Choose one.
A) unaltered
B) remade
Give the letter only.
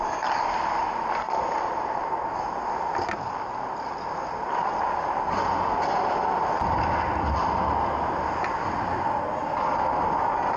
A